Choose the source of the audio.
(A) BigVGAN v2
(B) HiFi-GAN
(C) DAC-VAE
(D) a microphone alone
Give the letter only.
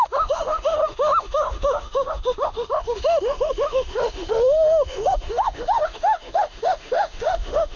C